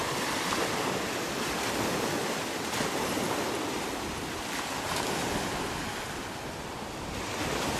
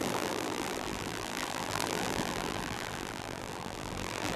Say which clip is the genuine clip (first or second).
first